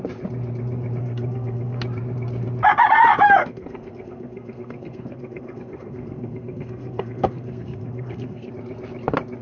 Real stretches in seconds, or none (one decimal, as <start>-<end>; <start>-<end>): 0.0-1.0; 1.8-3.4; 8.5-9.4